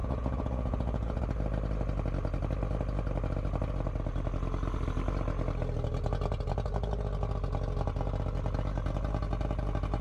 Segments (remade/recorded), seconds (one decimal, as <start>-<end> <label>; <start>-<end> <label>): 0.0-1.2 remade; 1.2-10.0 recorded